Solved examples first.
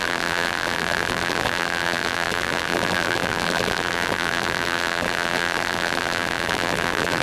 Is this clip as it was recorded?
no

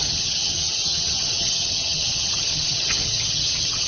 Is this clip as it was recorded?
no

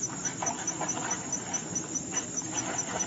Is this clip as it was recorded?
yes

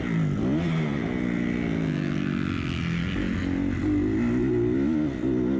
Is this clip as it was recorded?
yes